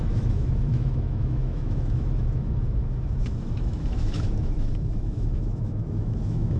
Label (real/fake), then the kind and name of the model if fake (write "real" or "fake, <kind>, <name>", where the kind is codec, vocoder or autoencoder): fake, autoencoder, DAC-VAE